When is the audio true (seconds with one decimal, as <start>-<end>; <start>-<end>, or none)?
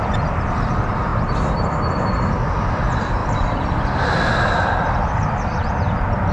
0.0-6.3